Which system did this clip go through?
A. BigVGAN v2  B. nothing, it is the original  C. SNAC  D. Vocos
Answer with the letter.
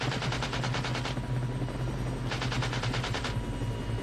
B